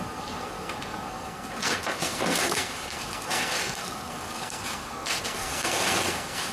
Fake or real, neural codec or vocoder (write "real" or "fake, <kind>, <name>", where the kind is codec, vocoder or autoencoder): fake, codec, SNAC